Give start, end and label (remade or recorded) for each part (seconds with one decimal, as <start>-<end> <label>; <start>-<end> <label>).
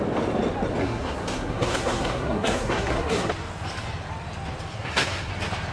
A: 0.0-0.8 recorded; 0.8-3.3 remade; 3.3-4.7 recorded; 4.7-5.3 remade; 5.3-5.7 recorded